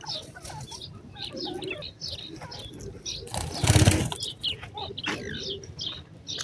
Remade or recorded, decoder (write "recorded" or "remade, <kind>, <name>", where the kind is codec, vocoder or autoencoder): recorded